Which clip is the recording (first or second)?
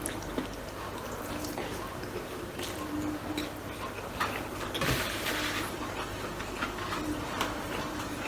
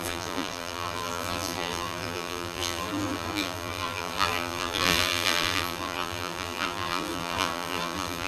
first